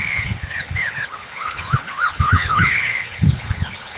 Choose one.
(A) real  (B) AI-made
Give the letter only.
B